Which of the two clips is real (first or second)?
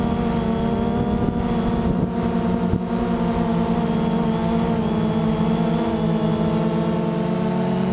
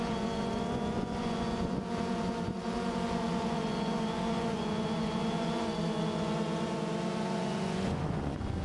first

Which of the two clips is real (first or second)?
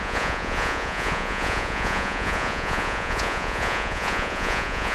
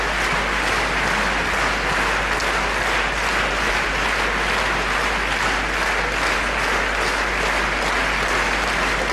second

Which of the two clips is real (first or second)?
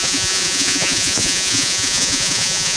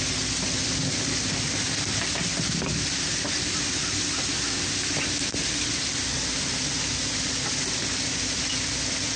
second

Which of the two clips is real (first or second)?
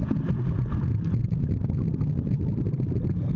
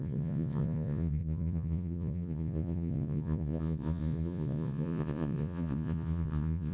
first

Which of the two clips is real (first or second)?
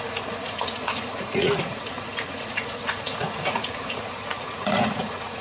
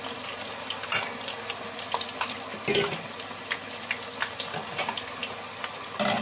second